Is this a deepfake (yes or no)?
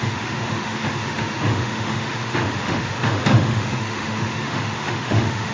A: yes